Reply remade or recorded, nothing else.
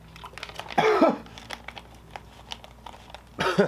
recorded